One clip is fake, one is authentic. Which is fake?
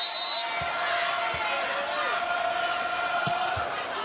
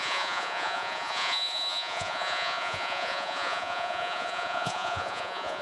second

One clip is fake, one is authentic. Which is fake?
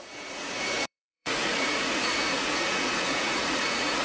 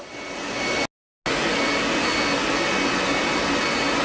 first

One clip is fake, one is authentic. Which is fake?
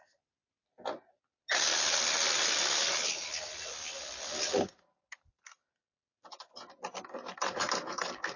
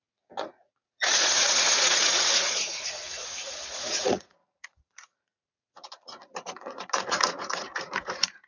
second